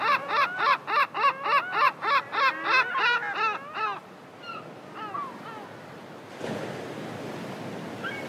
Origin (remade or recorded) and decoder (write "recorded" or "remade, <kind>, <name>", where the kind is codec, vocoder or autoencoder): recorded